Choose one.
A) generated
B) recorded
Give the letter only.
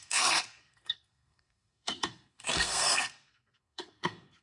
A